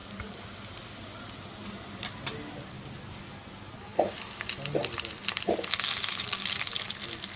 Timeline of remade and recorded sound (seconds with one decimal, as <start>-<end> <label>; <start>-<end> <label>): 0.0-7.4 recorded